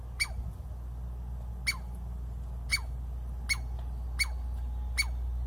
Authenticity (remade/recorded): recorded